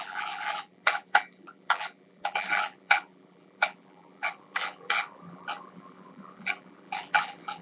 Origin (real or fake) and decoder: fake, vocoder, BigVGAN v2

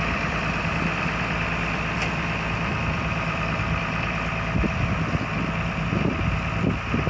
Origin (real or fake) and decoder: fake, vocoder, BigVGAN v2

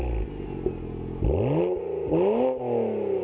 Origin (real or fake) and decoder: real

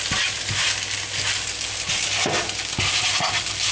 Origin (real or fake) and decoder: real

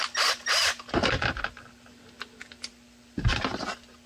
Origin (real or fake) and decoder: real